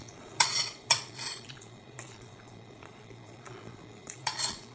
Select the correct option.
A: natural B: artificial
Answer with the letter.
B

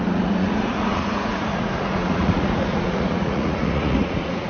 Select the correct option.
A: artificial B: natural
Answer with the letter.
A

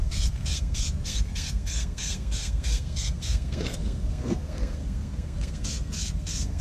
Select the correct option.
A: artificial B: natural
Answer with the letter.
A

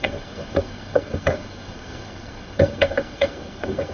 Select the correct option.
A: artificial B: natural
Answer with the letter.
A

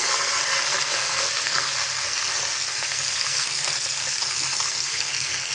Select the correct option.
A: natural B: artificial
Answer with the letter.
B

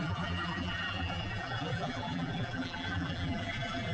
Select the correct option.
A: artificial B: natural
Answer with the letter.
A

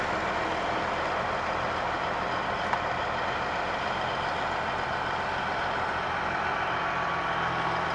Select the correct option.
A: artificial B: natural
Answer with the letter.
B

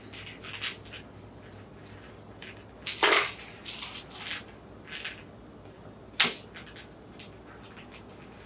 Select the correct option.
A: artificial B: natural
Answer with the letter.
B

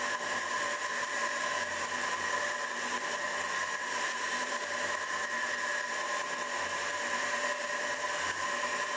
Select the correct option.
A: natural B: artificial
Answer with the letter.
B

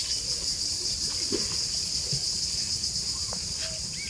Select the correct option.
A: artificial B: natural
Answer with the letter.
B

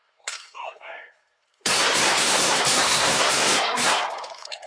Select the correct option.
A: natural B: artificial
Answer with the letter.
B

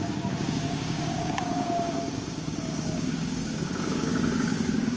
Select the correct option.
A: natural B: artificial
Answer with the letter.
B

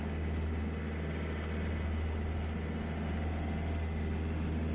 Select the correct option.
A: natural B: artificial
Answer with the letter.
A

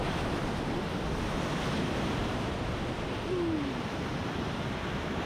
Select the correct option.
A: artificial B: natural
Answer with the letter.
B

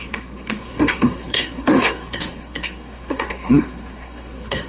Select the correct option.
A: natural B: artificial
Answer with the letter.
B